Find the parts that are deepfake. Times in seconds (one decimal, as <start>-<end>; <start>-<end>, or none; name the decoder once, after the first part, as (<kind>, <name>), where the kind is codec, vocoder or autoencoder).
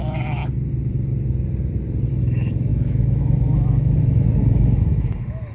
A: 0.0-0.4 (autoencoder, DAC-VAE); 2.2-5.5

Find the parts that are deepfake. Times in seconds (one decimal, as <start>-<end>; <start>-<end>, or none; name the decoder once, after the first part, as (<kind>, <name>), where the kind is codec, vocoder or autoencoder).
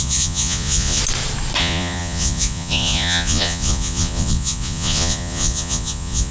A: 0.0-1.0 (vocoder, Vocos); 1.6-6.3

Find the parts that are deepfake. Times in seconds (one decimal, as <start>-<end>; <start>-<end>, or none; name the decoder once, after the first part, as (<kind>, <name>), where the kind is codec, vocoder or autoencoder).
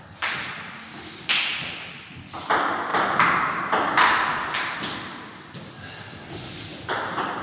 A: 6.7-7.4 (vocoder, BigVGAN v2)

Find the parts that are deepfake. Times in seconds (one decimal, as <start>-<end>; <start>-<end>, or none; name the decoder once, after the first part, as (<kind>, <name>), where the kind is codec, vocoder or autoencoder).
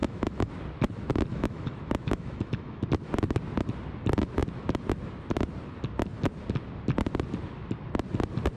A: 0.0-0.5 (autoencoder, DAC-VAE); 1.3-2.9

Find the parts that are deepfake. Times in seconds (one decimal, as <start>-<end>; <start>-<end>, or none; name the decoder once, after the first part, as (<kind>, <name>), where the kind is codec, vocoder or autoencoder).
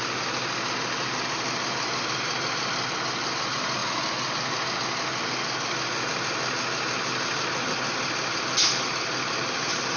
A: none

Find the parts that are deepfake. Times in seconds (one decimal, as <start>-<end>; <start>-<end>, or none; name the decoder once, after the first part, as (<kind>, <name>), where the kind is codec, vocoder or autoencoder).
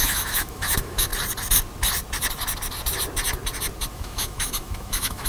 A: 0.0-1.1 (autoencoder, DAC-VAE); 3.9-5.3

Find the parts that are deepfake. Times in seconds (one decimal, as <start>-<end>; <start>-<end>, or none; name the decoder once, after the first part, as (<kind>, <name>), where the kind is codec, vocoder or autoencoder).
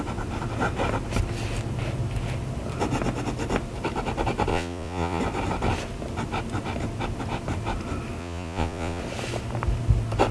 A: 4.5-5.2 (vocoder, Vocos); 8.2-9.0